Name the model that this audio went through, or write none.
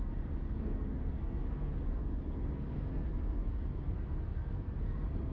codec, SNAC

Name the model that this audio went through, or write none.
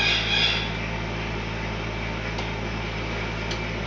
none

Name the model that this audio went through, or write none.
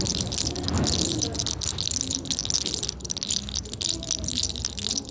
none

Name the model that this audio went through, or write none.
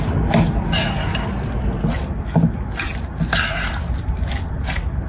none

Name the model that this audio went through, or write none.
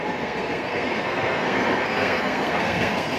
codec, SNAC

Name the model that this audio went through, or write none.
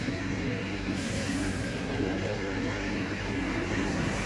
codec, SNAC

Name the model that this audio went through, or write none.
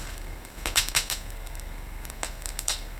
codec, SNAC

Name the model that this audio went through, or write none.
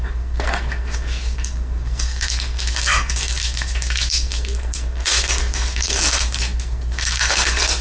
codec, SNAC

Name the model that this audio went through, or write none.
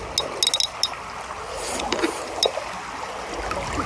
none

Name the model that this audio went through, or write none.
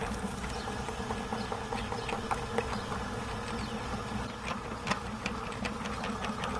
none